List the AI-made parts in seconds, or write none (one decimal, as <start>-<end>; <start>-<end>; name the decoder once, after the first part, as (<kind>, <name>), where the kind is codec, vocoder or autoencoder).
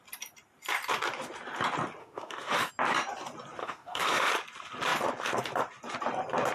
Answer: 2.0-2.7 (autoencoder, DAC-VAE); 3.6-4.3